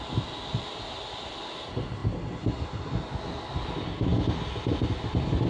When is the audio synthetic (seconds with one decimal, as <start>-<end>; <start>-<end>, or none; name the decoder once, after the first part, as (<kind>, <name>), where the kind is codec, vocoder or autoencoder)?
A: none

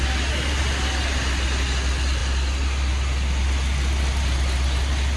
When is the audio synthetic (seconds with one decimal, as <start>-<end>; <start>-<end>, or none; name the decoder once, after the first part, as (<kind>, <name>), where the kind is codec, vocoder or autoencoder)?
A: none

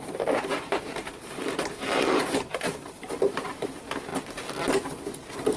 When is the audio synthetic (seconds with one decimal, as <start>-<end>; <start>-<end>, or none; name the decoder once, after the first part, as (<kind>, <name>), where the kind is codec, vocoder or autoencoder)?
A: 0.0-4.1 (vocoder, BigVGAN v2)

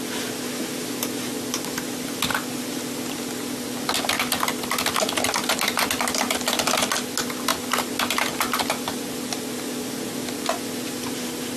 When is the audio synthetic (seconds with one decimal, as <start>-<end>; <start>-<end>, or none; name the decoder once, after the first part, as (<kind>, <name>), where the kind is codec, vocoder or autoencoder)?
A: none

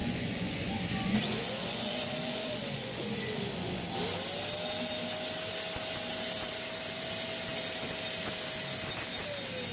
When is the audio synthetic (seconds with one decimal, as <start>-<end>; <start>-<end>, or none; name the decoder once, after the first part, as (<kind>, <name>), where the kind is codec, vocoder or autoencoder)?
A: 0.0-3.8 (vocoder, Vocos)

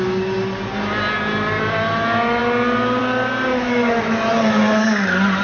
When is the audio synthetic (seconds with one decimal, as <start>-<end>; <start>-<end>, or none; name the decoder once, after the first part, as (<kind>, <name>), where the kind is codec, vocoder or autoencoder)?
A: 3.5-4.3 (autoencoder, DAC-VAE)

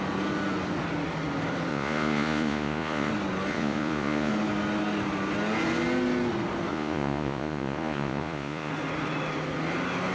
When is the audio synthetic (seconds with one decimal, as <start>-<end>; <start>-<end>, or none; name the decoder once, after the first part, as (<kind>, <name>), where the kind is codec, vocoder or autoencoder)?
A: 1.7-3.1 (vocoder, Vocos); 3.5-4.3; 6.7-8.7

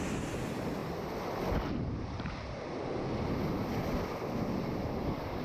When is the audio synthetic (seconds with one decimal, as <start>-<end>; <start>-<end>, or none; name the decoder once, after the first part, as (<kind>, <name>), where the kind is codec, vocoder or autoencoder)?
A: none